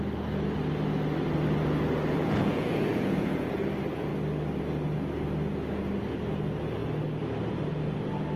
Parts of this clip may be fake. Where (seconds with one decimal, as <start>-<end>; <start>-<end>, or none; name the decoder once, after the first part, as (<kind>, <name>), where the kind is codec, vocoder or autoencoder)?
2.2-3.6 (vocoder, Vocos)